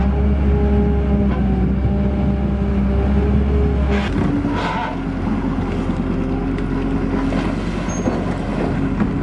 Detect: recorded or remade recorded